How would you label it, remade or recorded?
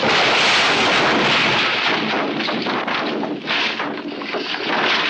recorded